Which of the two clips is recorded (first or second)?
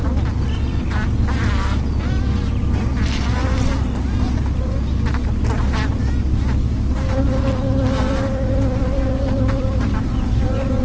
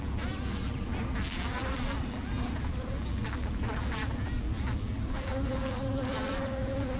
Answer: first